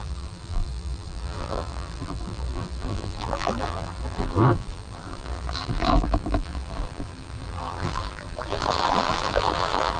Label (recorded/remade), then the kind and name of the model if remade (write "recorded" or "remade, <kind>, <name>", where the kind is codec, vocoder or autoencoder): remade, vocoder, BigVGAN v2